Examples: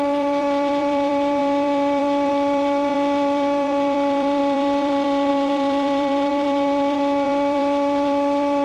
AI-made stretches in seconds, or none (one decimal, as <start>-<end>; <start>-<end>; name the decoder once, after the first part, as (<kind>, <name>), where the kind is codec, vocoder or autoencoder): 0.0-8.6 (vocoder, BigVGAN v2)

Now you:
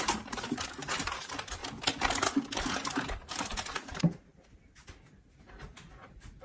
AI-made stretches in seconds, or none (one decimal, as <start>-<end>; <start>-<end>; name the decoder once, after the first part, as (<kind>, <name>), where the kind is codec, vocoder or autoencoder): 0.0-1.6 (vocoder, BigVGAN v2); 2.7-4.3

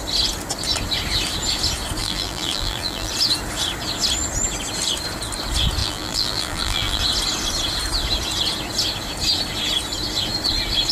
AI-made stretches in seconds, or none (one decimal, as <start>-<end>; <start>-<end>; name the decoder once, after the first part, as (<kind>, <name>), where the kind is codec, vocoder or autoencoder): 2.0-3.1 (vocoder, BigVGAN v2); 5.8-7.0